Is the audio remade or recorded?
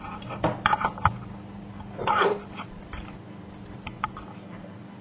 remade